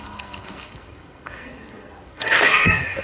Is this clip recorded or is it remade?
remade